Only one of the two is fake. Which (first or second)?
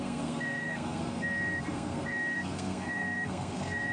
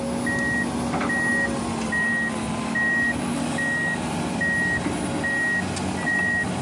first